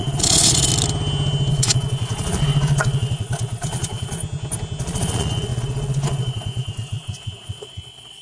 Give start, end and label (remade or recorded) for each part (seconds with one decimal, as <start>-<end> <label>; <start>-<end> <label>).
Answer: 0.0-0.7 remade; 0.7-1.5 recorded; 1.5-4.2 remade; 4.2-4.8 recorded; 4.8-8.2 remade